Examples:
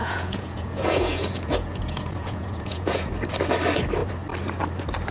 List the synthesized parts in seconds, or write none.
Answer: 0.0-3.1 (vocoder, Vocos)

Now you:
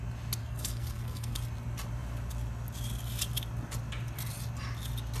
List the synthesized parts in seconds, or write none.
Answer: 0.4-1.4 (codec, SNAC)

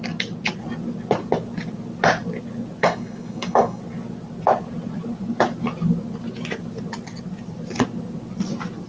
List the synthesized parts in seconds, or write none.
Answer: 2.8-3.8 (codec, DAC)

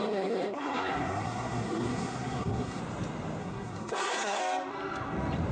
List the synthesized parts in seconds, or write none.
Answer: 0.0-2.8 (codec, SNAC); 3.4-4.4

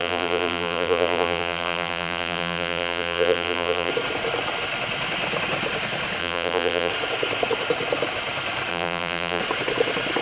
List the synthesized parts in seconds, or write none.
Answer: 0.0-3.9 (vocoder, BigVGAN v2); 6.2-6.9; 8.7-9.4

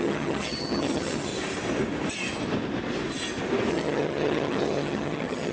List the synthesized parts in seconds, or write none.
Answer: 0.0-1.3 (vocoder, HiFi-GAN); 3.7-5.5

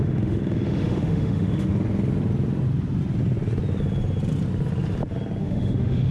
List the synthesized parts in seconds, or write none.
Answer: 0.0-1.7 (autoencoder, DAC-VAE); 5.4-6.1